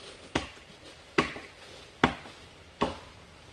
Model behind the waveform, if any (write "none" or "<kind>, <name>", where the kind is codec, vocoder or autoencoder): none